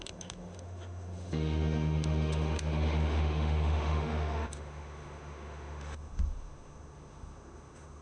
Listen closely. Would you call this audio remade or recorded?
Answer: remade